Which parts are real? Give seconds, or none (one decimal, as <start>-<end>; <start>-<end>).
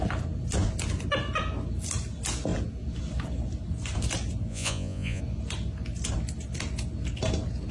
0.0-4.5; 5.2-7.7